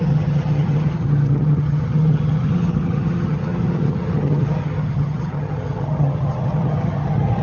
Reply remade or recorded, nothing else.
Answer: remade